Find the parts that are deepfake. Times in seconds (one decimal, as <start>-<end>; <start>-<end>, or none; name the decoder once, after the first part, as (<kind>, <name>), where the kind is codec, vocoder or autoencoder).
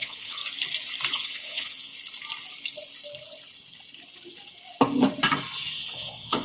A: 0.0-0.4 (vocoder, WaveNeXt); 1.1-1.9; 5.7-6.4